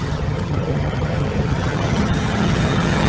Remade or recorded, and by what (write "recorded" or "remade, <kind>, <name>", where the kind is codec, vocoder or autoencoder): remade, vocoder, HiFi-GAN